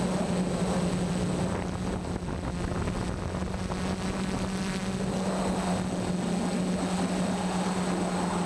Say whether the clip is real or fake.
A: real